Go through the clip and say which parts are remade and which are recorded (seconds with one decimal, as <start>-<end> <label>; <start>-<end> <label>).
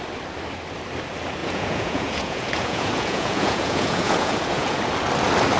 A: 0.0-1.4 recorded; 1.4-4.8 remade; 4.8-5.6 recorded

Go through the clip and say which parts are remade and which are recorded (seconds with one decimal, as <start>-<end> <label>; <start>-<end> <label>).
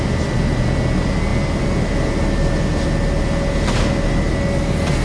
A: 0.0-5.0 recorded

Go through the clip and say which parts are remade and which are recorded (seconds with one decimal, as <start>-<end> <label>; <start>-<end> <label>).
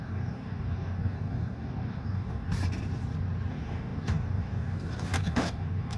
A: 0.0-2.5 remade; 2.5-3.5 recorded; 3.5-6.0 remade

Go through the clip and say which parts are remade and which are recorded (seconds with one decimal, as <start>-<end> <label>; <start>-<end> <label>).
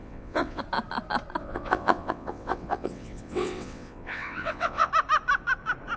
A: 0.0-0.6 remade; 0.6-1.4 recorded; 1.4-4.9 remade; 4.9-6.0 recorded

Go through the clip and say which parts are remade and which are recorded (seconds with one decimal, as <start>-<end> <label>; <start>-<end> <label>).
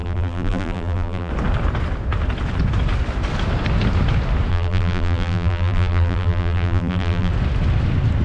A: 0.0-1.3 remade; 1.3-4.5 recorded; 4.5-7.3 remade; 7.3-8.2 recorded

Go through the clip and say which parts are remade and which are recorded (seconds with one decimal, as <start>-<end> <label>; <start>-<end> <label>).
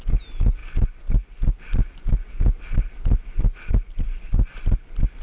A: 0.0-5.2 recorded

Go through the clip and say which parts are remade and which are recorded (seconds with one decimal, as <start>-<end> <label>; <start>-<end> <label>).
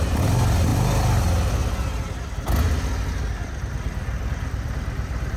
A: 0.0-3.4 recorded; 3.4-5.4 remade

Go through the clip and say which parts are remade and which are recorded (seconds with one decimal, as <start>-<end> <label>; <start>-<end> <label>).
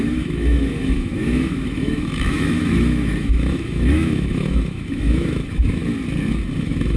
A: 0.0-5.8 remade; 5.8-6.6 recorded; 6.6-7.0 remade